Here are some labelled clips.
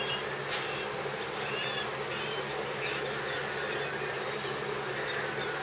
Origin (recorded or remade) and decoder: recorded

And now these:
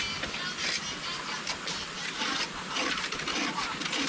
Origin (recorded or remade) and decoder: recorded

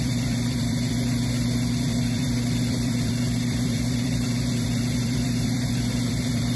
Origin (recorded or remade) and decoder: remade, vocoder, BigVGAN v2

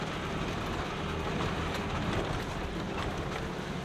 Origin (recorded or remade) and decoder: recorded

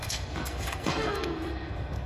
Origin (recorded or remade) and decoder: remade, codec, SNAC